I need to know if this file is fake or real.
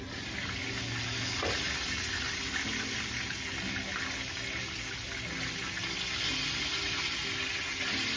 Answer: real